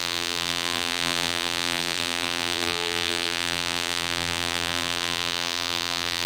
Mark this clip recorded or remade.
remade